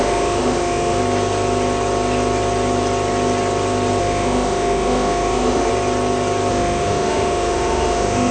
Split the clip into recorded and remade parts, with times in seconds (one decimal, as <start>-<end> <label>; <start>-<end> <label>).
0.0-1.0 remade; 1.0-4.0 recorded; 4.0-5.7 remade; 5.7-6.5 recorded; 6.5-8.3 remade